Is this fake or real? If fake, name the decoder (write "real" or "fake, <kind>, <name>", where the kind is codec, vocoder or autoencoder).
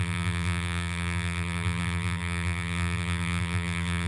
fake, vocoder, BigVGAN v2